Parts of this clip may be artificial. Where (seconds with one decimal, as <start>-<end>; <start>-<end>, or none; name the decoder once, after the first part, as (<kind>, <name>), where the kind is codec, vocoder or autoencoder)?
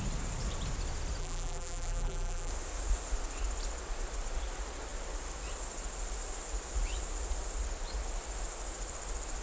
1.2-2.5 (vocoder, BigVGAN v2)